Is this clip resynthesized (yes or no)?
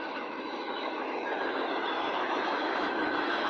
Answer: yes